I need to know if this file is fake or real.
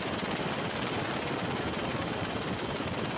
real